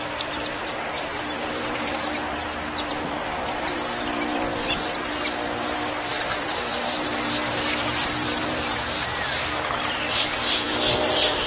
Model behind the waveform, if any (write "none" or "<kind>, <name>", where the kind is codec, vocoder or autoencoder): vocoder, BigVGAN v2